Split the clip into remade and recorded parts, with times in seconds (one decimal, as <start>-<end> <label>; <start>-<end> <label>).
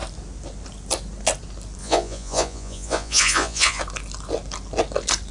0.0-1.8 recorded; 1.8-3.8 remade; 3.8-5.3 recorded